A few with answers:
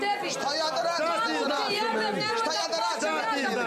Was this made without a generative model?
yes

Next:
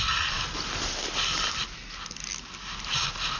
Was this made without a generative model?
yes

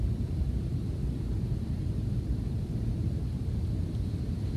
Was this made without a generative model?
no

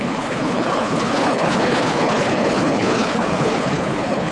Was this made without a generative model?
no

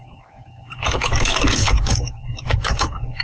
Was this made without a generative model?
no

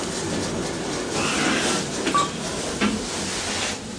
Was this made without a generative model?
yes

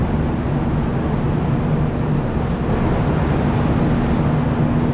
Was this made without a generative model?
yes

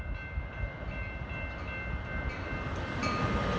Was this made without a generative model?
yes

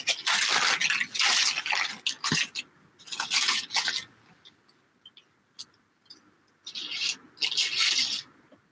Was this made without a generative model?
yes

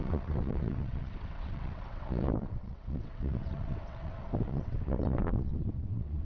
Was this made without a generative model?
no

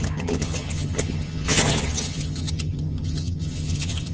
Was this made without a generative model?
no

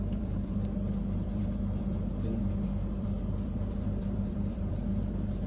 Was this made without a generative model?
no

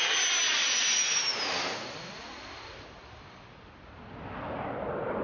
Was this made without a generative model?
yes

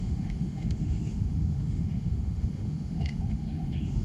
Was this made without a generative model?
no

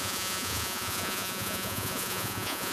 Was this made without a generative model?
no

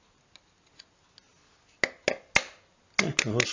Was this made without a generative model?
yes